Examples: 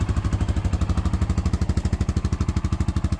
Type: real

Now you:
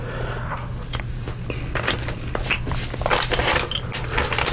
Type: real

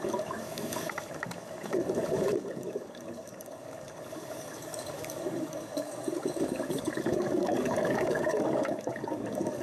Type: fake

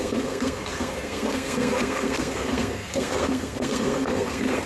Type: fake